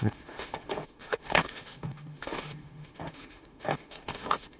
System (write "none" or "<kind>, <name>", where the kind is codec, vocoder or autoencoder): autoencoder, DAC-VAE